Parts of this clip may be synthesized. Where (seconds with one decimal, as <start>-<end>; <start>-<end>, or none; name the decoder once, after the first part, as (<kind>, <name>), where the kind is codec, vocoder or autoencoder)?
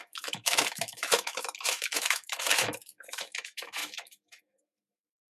0.0-5.3 (autoencoder, DAC-VAE)